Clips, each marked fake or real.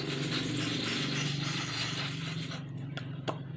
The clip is real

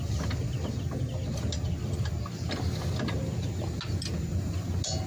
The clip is real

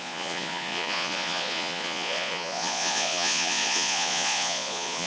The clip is fake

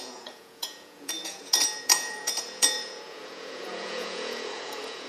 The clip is fake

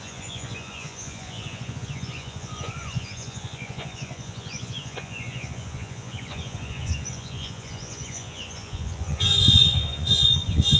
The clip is fake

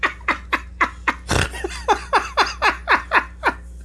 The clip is real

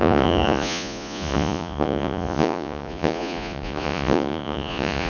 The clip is fake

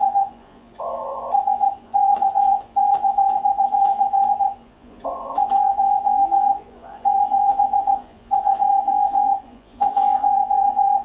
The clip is fake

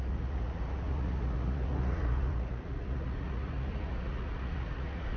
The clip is fake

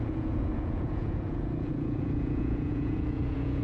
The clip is fake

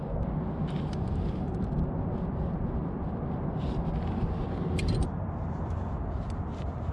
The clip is real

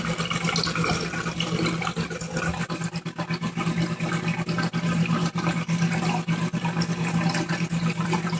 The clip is real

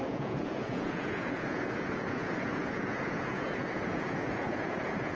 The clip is fake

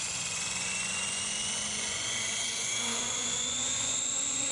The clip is fake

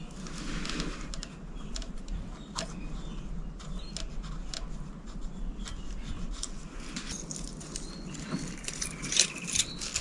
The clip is real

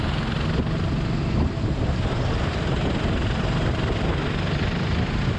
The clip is real